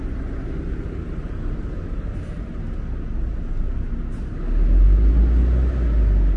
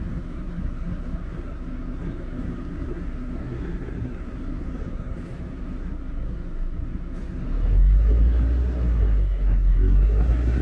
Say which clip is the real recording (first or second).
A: first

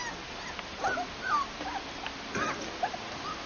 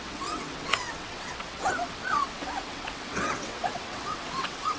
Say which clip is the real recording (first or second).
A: first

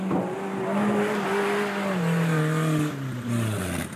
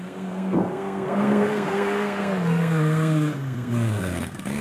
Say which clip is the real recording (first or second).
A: first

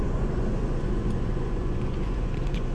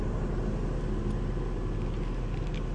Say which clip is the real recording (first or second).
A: second